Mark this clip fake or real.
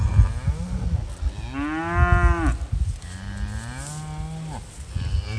real